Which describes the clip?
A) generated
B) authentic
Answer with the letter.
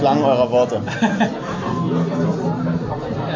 B